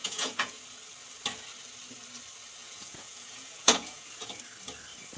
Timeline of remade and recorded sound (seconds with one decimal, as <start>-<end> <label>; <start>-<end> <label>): 0.0-0.6 remade; 0.6-2.6 recorded; 2.6-4.3 remade; 4.3-5.2 recorded